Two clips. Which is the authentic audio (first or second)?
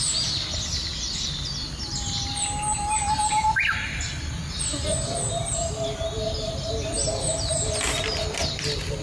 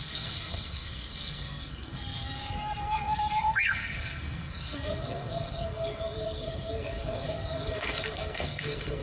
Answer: first